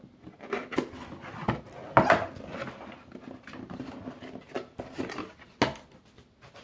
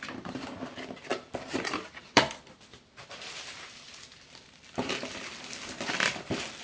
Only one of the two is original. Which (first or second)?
first